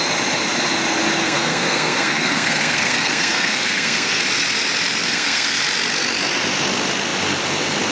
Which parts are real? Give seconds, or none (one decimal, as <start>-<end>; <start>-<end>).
0.0-1.2; 4.2-5.0; 5.6-7.9